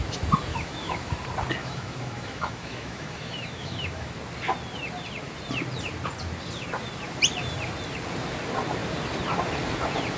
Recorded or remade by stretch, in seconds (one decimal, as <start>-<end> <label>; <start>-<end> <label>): 0.0-0.5 recorded; 0.5-1.1 remade; 1.1-1.6 recorded; 1.6-4.1 remade; 4.1-10.2 recorded